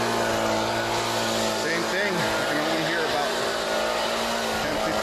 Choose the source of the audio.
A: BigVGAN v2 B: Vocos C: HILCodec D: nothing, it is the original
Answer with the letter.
D